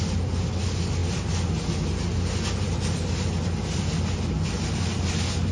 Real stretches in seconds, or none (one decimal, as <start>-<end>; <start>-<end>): 0.0-5.5